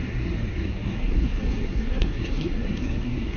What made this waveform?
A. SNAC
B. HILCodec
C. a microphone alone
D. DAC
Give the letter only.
A